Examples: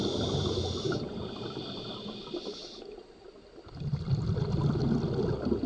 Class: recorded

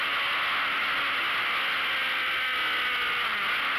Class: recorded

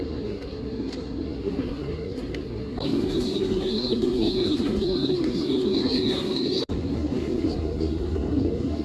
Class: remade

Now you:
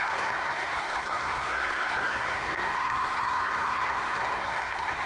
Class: remade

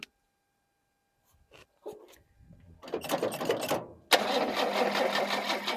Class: recorded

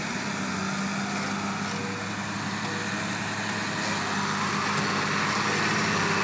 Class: recorded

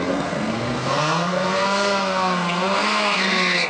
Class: remade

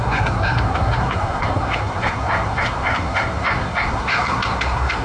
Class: remade